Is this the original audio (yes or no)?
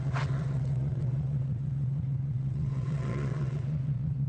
no